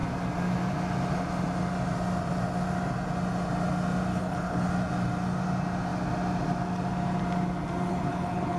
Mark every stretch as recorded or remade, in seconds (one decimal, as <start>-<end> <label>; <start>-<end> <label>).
0.0-4.1 recorded; 4.1-4.7 remade; 4.7-7.9 recorded; 7.9-8.6 remade